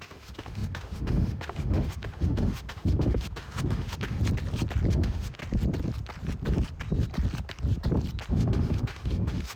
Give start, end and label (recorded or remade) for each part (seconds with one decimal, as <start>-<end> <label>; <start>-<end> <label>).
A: 0.0-4.2 remade; 4.2-4.9 recorded; 4.9-5.4 remade; 5.4-8.3 recorded; 8.3-9.6 remade